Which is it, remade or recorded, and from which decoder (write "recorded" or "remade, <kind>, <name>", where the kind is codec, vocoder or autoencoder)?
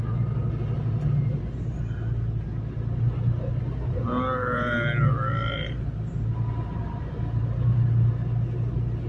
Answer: recorded